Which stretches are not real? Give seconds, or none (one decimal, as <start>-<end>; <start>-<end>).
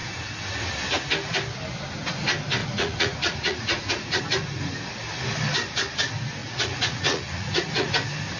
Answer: 2.6-4.2; 6.4-7.9